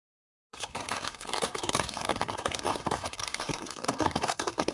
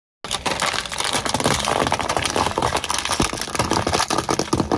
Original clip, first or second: second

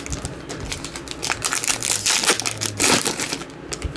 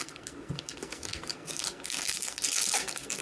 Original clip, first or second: first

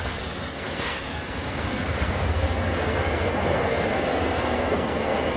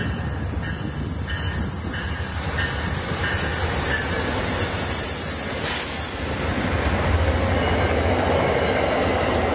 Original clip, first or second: second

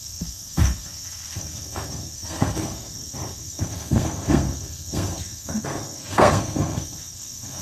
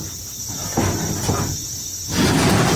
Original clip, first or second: second